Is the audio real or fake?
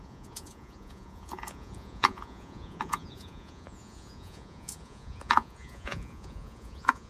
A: fake